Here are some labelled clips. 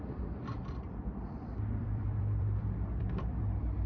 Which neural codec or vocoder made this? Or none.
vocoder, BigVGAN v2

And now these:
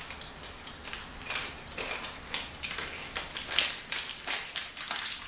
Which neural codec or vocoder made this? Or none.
none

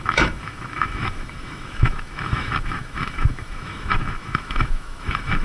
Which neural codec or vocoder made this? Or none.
autoencoder, DAC-VAE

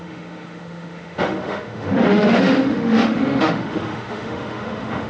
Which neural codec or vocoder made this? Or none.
autoencoder, DAC-VAE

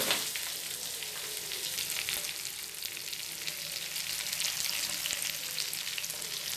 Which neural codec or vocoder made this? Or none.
none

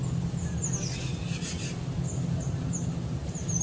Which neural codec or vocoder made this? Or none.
none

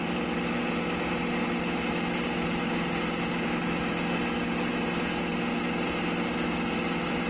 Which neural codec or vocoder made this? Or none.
none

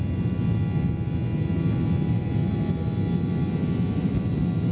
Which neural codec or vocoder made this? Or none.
none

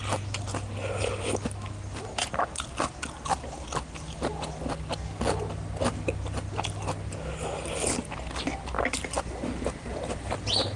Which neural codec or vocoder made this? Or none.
none